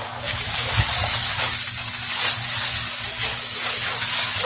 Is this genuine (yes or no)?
no